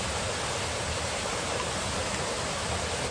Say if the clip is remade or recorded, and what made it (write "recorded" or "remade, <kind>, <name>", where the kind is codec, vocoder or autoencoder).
recorded